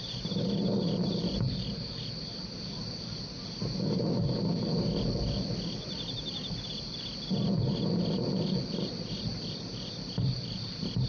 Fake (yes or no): no